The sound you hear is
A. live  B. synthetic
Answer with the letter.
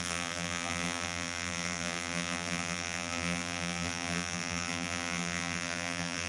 B